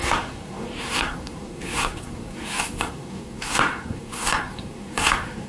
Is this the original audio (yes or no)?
no